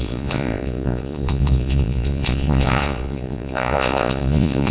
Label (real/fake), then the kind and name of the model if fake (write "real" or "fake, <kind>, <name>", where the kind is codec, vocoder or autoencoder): fake, vocoder, Vocos